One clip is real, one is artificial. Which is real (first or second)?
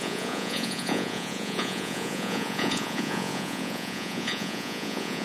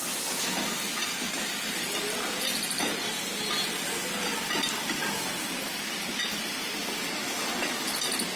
second